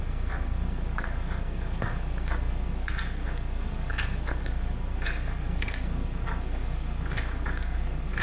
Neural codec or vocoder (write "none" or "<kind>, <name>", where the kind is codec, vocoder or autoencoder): codec, SNAC